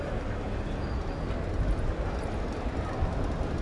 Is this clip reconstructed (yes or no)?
no